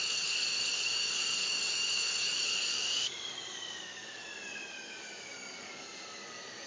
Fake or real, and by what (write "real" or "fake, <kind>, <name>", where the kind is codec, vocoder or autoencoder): fake, codec, DAC